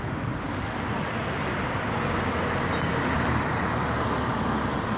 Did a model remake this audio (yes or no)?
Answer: no